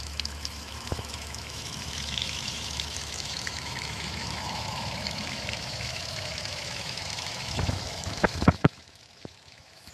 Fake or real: fake